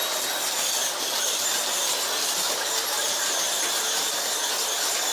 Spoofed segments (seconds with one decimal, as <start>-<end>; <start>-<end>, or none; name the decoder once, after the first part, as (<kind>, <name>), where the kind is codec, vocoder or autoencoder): none

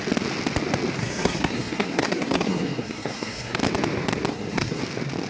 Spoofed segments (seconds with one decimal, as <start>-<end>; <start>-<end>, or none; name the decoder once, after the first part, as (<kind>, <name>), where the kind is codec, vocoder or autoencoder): 1.0-3.6 (codec, SNAC); 4.3-4.8

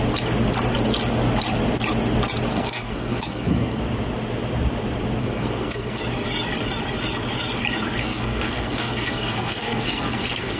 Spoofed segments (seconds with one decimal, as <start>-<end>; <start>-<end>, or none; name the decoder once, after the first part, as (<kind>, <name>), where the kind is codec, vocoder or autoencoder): 2.5-3.8 (codec, SNAC); 5.2-6.0; 8.0-10.6

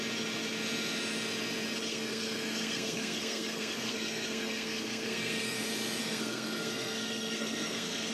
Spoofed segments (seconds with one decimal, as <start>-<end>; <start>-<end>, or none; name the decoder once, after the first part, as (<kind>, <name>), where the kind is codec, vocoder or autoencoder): 1.9-5.6 (codec, SNAC); 6.0-8.1

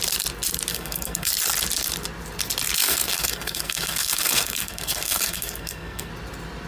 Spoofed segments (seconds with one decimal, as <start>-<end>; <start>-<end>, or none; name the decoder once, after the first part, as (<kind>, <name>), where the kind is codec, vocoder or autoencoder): 0.7-1.3 (codec, SNAC); 2.8-6.1

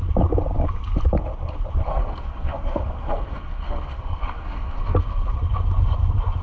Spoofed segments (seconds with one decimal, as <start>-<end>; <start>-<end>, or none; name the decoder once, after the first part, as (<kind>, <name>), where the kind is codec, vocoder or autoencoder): 1.9-5.2 (codec, SNAC)

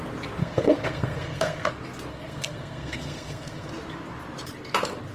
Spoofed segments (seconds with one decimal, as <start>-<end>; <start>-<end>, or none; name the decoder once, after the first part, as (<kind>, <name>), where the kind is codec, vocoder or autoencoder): 0.4-1.7 (codec, SNAC); 2.1-3.7